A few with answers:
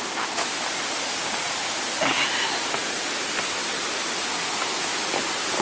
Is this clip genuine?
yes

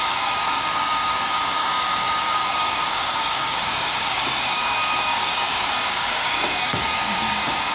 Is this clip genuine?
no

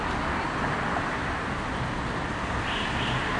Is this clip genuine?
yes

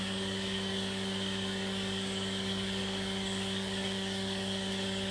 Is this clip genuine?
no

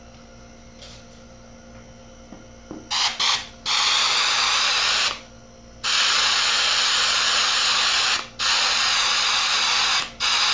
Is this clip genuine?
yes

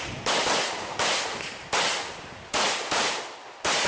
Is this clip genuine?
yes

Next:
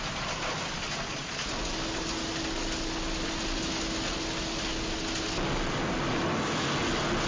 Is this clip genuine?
yes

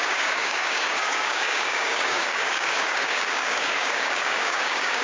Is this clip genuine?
no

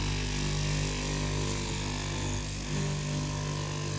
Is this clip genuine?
yes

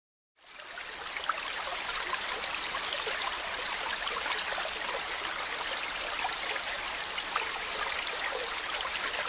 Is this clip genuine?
yes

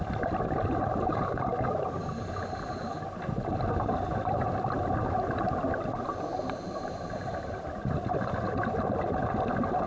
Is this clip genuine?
yes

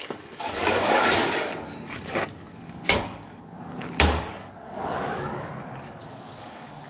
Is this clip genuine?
no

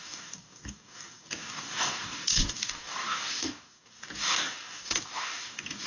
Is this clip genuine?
no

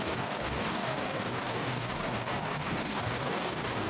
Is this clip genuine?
no